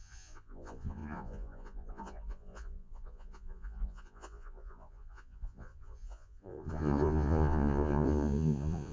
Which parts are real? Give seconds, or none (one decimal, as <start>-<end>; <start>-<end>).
none